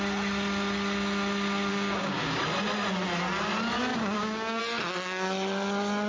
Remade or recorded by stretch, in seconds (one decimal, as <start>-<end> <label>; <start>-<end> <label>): 0.0-1.7 recorded; 1.7-2.4 remade; 2.4-3.9 recorded; 3.9-4.6 remade; 4.6-6.1 recorded